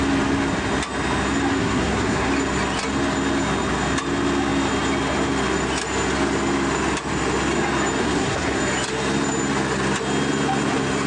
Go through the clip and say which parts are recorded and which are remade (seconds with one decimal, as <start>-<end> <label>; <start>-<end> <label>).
0.0-1.5 recorded; 1.5-2.3 remade; 2.3-8.0 recorded; 8.0-8.6 remade; 8.6-11.1 recorded